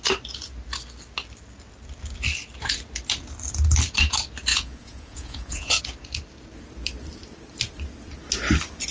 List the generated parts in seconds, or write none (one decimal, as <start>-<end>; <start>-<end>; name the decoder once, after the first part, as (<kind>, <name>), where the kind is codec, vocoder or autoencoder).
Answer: 4.5-5.8 (vocoder, Vocos)